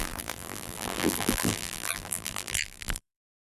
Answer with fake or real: fake